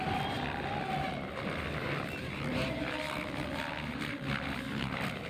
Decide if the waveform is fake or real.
real